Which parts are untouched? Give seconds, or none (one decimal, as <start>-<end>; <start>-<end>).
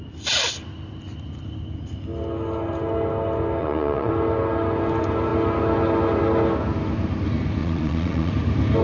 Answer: 0.0-3.6; 4.1-7.6; 8.3-8.8